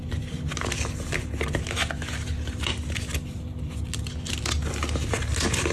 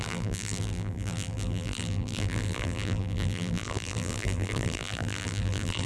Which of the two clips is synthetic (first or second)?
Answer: second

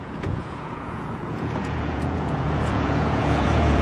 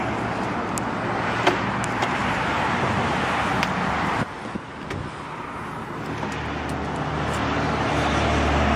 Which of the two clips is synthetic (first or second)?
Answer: first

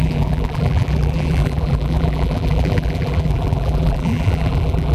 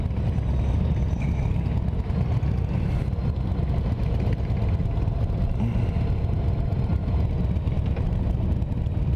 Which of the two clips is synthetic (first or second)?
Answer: first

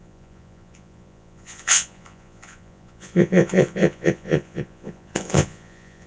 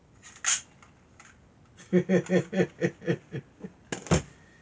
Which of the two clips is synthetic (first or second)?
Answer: first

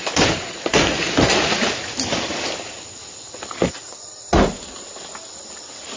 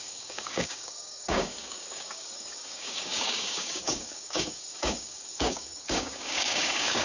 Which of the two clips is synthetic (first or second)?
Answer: second